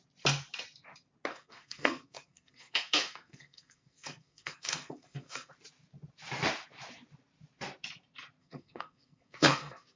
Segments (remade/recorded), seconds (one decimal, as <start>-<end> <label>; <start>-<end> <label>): 0.0-1.3 recorded; 1.3-5.5 remade; 5.5-8.4 recorded; 8.4-10.0 remade